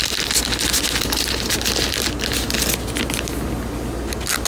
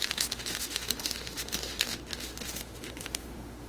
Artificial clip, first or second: second